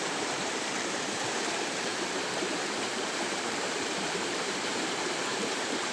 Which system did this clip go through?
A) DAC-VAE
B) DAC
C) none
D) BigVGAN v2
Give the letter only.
D